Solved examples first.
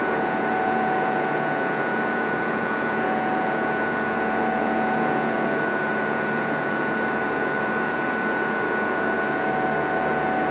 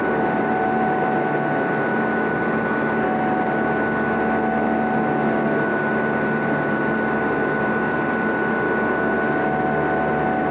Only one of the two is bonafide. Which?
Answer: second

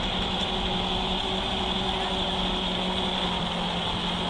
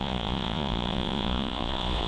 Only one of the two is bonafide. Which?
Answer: first